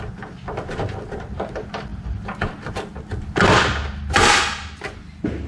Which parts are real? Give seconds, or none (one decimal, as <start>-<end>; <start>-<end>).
0.0-5.5